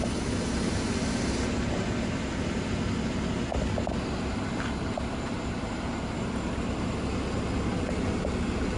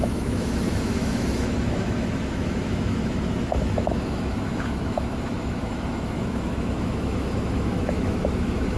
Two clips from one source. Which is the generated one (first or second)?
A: second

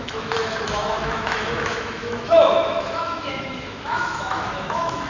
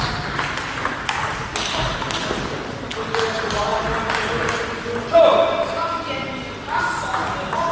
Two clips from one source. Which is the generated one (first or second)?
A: first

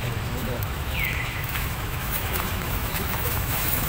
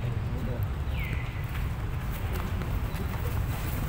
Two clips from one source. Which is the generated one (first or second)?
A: first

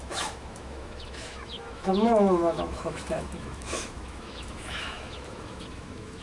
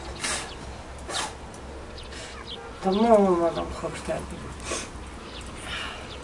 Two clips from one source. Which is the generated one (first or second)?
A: first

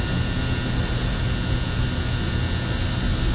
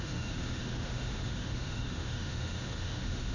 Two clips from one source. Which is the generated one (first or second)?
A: second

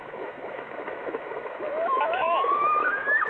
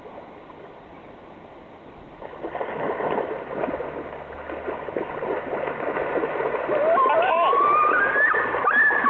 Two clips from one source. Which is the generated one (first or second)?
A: first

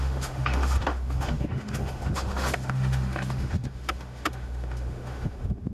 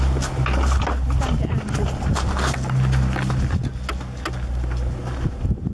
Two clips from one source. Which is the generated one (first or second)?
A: first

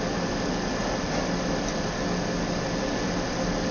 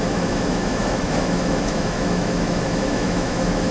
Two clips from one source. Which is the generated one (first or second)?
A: second